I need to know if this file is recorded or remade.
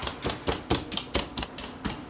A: recorded